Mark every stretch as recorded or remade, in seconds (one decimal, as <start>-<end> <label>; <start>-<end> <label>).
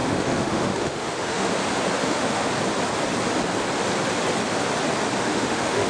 0.0-1.5 remade; 1.5-2.0 recorded; 2.0-2.5 remade; 2.5-5.2 recorded; 5.2-5.9 remade